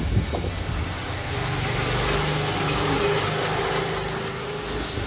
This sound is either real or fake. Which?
real